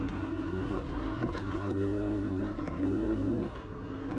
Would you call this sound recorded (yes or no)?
no